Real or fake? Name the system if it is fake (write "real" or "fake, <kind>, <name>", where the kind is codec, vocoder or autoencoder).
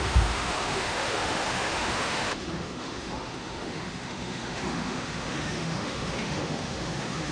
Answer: fake, autoencoder, DAC-VAE